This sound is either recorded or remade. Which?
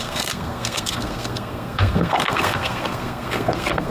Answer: remade